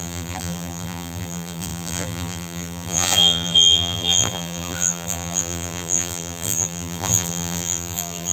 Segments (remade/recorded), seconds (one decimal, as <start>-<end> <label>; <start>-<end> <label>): 0.0-8.3 remade